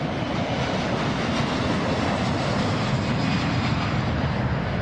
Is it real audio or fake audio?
real